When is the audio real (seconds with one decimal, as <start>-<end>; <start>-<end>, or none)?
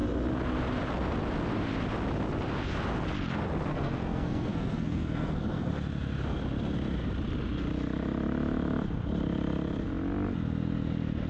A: 0.0-3.7; 5.7-11.3